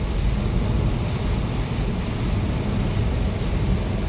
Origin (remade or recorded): recorded